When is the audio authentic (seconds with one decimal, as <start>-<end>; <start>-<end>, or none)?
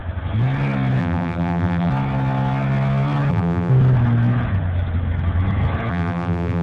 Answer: 0.0-1.0; 1.9-3.3; 3.7-5.9